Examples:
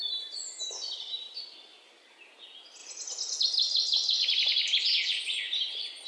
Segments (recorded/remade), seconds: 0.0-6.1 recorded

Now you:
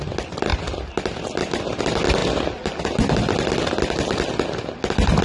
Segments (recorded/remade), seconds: 0.0-5.2 recorded

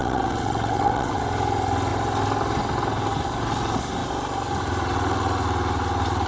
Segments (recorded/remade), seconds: 0.0-1.2 remade; 1.2-6.3 recorded

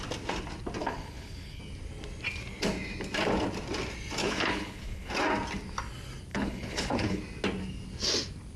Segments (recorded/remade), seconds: 0.0-0.8 recorded; 0.8-1.6 remade; 1.6-4.2 recorded; 4.2-5.1 remade; 5.1-6.3 recorded; 6.3-7.2 remade; 7.2-8.6 recorded

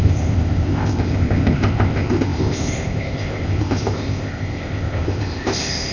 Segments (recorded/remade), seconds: 0.0-5.9 remade

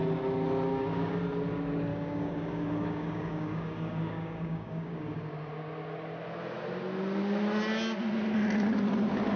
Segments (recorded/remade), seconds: 0.0-0.7 recorded; 0.7-1.2 remade; 1.2-1.9 recorded; 1.9-5.5 remade; 5.5-9.4 recorded

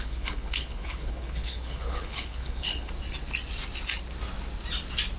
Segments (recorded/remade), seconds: 0.0-2.9 remade; 2.9-5.2 recorded

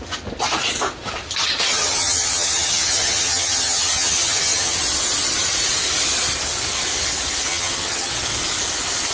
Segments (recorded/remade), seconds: 0.0-1.7 recorded; 1.7-4.8 remade; 4.8-7.5 recorded; 7.5-8.1 remade; 8.1-9.1 recorded